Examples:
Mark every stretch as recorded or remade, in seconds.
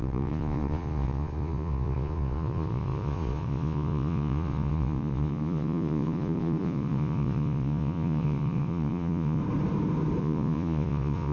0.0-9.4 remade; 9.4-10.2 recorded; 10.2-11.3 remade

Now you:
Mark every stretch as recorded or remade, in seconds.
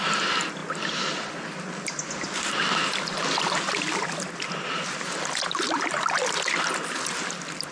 0.0-7.7 recorded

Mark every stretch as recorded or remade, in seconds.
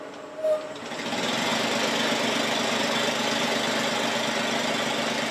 0.0-5.3 recorded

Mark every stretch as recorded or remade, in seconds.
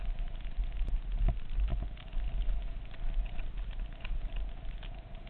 0.0-5.3 recorded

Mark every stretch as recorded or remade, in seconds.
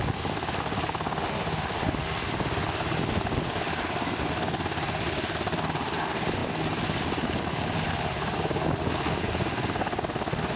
0.0-10.6 recorded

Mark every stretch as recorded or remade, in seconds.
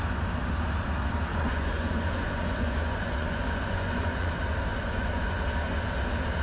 0.0-1.3 recorded; 1.3-4.3 remade; 4.3-4.7 recorded; 4.7-5.4 remade; 5.4-6.4 recorded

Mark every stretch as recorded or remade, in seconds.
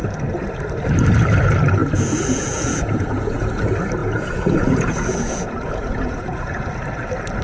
0.0-1.8 recorded; 1.8-3.6 remade; 3.6-4.0 recorded; 4.0-6.7 remade; 6.7-7.4 recorded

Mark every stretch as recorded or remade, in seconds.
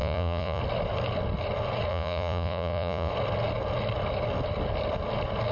0.0-0.6 remade; 0.6-1.9 recorded; 1.9-3.1 remade; 3.1-5.5 recorded